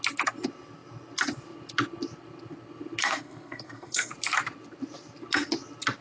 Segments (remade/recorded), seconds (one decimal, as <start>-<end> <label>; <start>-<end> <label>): 0.0-3.0 recorded; 3.0-4.1 remade; 4.1-6.0 recorded